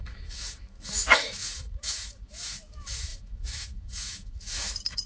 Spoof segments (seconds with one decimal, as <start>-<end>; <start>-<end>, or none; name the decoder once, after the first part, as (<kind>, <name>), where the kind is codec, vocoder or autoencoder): 0.0-5.1 (autoencoder, DAC-VAE)

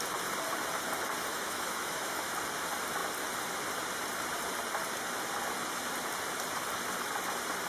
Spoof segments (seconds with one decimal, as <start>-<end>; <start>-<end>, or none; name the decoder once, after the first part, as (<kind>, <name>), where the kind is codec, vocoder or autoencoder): 1.3-2.3 (autoencoder, DAC-VAE)

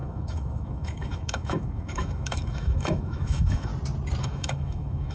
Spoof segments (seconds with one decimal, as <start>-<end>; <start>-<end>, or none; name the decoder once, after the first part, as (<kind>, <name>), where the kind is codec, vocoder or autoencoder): 0.0-3.7 (autoencoder, DAC-VAE); 4.2-5.1

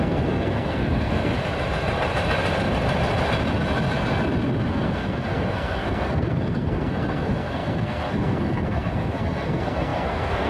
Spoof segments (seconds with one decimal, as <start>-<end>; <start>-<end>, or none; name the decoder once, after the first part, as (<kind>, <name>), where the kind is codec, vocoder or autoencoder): 0.0-1.3 (codec, SNAC); 4.7-10.5

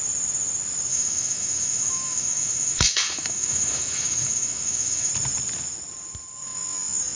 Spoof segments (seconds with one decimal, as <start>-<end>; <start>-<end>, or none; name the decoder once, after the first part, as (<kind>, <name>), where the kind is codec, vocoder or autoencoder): 0.9-5.1 (autoencoder, DAC-VAE)